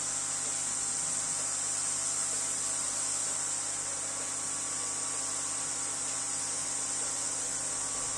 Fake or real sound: real